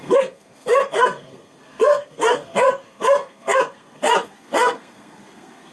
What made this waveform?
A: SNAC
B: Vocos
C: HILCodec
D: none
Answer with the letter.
A